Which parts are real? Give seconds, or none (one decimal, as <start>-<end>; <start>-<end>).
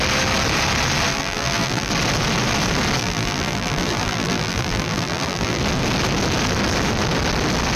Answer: 0.0-1.1; 1.9-3.0; 5.6-7.8